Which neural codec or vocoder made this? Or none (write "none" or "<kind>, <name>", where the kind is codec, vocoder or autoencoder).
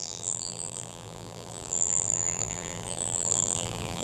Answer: vocoder, BigVGAN v2